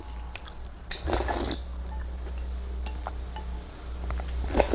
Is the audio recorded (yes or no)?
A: yes